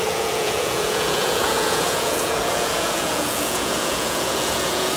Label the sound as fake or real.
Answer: fake